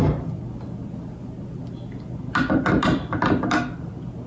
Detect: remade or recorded recorded